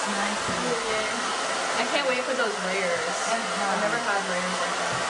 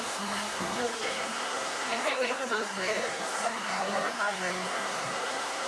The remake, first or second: second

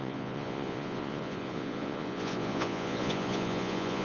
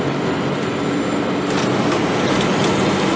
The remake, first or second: first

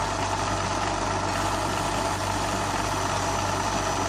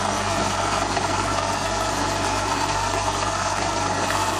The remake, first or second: second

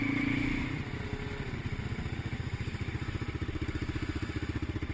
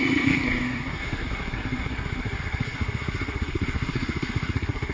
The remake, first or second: second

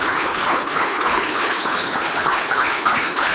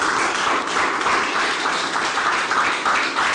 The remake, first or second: first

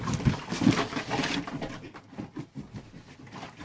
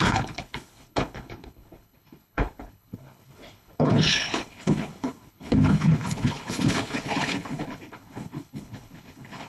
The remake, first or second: second